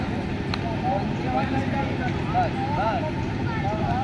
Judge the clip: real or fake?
real